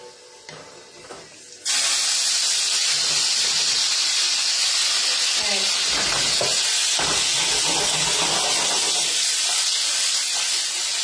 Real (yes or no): yes